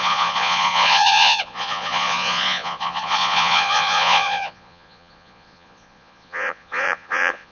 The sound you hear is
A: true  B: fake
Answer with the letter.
B